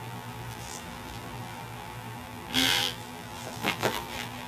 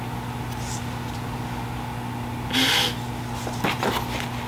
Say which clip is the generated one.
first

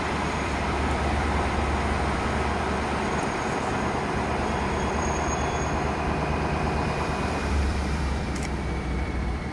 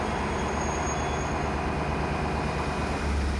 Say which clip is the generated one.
first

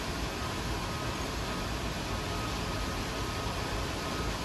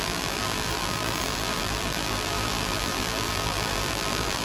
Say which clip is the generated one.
second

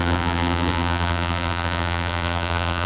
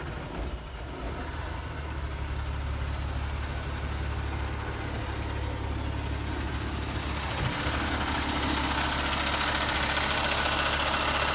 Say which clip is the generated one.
first